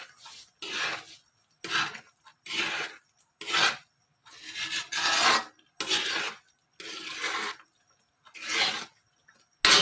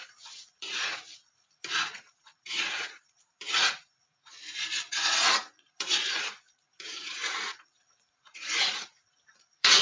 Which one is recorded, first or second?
first